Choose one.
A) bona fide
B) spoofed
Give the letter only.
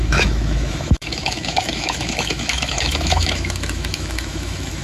B